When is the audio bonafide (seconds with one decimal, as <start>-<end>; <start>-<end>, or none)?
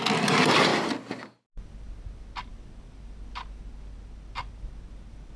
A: 0.0-5.4